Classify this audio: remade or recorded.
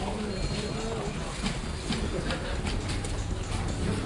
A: recorded